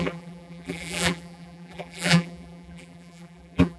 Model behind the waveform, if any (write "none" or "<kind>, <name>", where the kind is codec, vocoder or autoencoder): vocoder, BigVGAN v2